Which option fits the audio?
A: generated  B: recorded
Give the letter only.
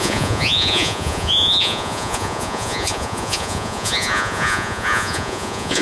A